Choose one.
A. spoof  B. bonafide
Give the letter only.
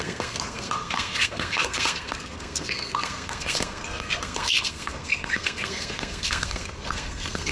A